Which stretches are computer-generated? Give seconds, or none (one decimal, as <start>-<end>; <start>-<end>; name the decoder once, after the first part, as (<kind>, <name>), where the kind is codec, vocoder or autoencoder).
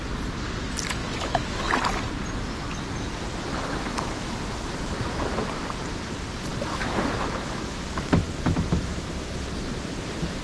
1.0-1.7 (autoencoder, DAC-VAE); 3.5-4.4; 6.5-9.0